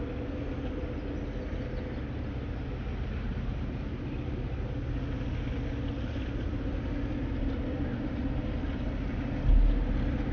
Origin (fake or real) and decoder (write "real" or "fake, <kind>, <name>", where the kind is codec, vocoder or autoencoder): real